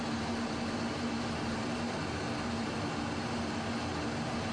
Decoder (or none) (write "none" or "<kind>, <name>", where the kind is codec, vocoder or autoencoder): none